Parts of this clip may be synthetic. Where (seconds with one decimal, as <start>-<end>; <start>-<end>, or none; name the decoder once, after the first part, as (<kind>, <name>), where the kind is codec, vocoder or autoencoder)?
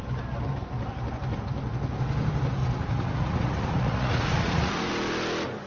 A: 2.6-4.9 (vocoder, Vocos)